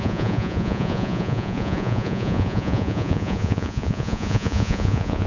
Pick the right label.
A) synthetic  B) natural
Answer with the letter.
A